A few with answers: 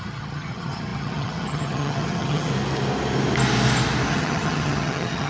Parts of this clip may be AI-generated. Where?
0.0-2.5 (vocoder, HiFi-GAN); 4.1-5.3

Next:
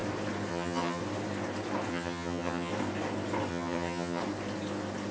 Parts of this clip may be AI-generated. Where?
0.5-1.0 (vocoder, HiFi-GAN); 1.9-2.7; 3.5-4.2

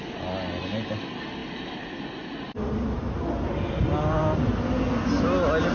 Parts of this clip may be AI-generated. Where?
none

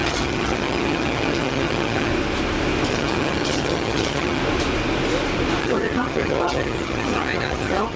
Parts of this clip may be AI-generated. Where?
0.0-2.1 (vocoder, HiFi-GAN); 2.9-4.4; 5.6-8.0

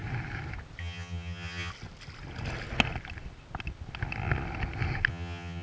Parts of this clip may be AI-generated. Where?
0.8-1.7 (vocoder, HiFi-GAN); 5.1-5.6

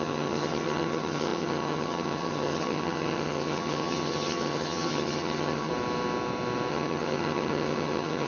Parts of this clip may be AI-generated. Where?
0.0-5.7 (vocoder, HiFi-GAN); 6.7-8.3

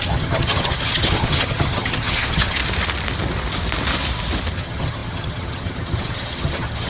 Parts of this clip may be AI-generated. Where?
0.0-2.6 (vocoder, HiFi-GAN); 4.5-6.9